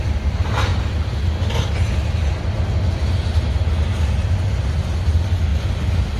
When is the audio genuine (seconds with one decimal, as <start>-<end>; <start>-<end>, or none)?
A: 0.0-6.2